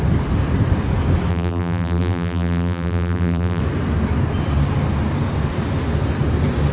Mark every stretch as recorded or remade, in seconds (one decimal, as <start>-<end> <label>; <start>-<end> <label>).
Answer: 0.0-1.3 recorded; 1.3-3.6 remade; 3.6-6.7 recorded